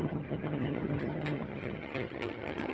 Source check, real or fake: fake